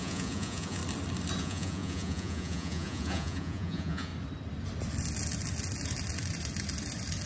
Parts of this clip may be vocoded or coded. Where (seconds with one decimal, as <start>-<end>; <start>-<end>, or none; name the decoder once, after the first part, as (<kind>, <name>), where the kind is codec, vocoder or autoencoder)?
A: 0.0-0.8 (vocoder, Vocos); 1.4-4.1